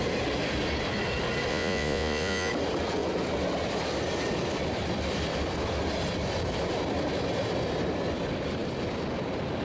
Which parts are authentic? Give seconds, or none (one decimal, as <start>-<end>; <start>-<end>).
0.0-1.5; 2.5-9.6